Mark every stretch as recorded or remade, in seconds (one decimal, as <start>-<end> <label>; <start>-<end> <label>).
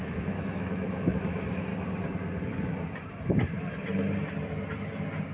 0.0-1.7 remade; 1.7-5.3 recorded